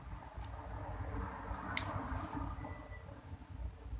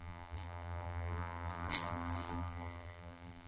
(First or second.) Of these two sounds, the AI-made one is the second